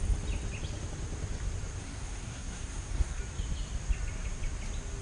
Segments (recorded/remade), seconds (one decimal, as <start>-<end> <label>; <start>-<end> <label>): 0.0-1.8 recorded; 1.8-3.2 remade; 3.2-5.0 recorded